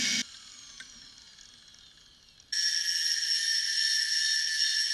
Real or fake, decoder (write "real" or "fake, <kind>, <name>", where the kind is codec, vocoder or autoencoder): real